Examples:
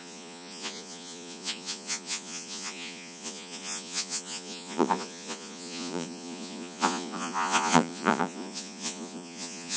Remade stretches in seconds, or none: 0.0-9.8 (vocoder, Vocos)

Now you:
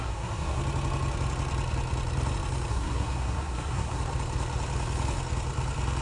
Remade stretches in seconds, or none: 0.0-0.6 (codec, SNAC); 2.7-4.0